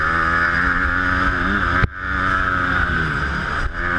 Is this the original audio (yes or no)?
yes